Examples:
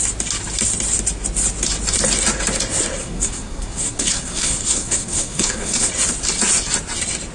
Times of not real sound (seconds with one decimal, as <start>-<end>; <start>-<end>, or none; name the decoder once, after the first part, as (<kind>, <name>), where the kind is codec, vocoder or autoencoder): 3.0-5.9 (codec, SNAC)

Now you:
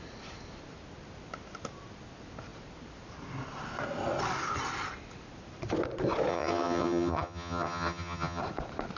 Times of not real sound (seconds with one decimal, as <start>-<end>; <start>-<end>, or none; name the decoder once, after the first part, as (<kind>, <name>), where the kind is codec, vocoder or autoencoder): 6.3-8.4 (vocoder, HiFi-GAN)

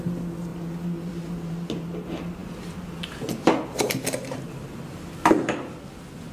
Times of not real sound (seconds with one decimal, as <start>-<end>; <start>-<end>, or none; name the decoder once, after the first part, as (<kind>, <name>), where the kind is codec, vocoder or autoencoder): none

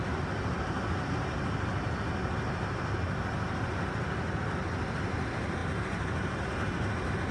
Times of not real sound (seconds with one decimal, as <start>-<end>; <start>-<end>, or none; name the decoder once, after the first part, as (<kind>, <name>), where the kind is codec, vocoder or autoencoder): none

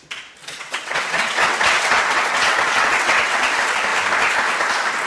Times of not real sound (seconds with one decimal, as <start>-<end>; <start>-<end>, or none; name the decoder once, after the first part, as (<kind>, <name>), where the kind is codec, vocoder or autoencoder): 0.4-3.5 (vocoder, WaveNeXt)

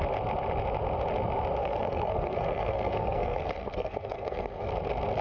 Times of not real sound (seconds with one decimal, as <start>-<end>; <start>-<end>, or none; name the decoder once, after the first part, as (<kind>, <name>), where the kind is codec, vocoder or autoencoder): 1.6-4.7 (codec, SNAC)

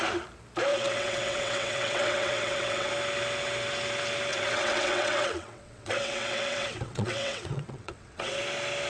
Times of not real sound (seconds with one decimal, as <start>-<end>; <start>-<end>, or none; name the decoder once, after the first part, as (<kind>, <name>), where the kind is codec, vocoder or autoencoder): 0.7-2.9 (vocoder, WaveNeXt); 4.3-8.4

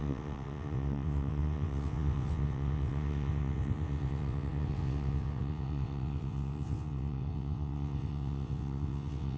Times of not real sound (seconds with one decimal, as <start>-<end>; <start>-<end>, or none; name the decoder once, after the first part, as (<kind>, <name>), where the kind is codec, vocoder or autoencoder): 0.0-9.4 (vocoder, WaveNeXt)